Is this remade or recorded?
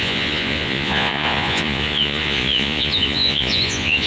remade